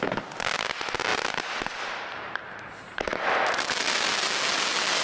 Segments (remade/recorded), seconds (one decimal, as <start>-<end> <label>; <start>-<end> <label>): 0.0-1.1 recorded; 1.1-4.1 remade; 4.1-5.0 recorded